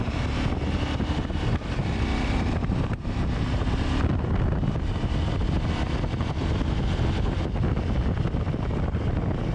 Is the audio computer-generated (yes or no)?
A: no